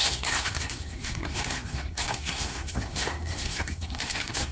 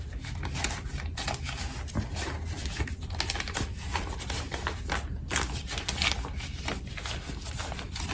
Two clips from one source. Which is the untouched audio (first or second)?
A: second